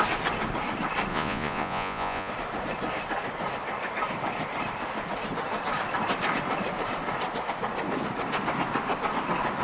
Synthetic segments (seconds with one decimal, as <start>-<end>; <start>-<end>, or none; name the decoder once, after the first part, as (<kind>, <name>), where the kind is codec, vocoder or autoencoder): 1.1-2.3 (vocoder, Vocos)